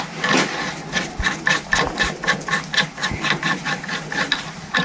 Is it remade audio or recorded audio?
recorded